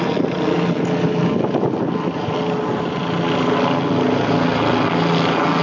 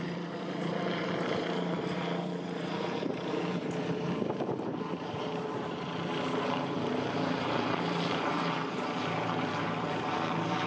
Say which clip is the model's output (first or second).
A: second